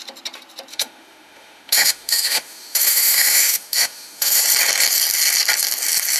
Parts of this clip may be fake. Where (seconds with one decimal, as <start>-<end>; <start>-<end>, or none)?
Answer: 0.7-4.4